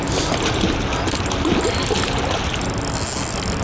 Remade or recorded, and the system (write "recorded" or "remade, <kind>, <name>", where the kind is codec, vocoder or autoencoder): recorded